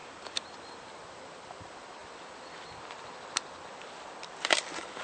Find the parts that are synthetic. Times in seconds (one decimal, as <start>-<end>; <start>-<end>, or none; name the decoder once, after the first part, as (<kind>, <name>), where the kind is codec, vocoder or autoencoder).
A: 0.5-2.0 (vocoder, BigVGAN v2)